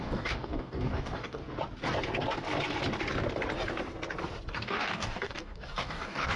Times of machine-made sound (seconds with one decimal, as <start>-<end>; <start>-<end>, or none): 0.0-1.4; 4.5-6.4